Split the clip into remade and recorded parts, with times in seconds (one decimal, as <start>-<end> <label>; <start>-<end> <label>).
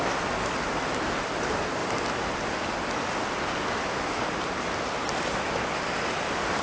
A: 0.0-6.6 recorded